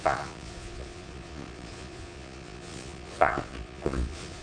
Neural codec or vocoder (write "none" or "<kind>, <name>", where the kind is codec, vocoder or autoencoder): vocoder, Vocos